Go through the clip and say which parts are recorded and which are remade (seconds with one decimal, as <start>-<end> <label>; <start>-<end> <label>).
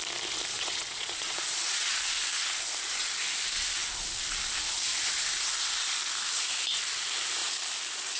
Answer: 0.0-0.5 recorded; 0.5-2.0 remade; 2.0-8.2 recorded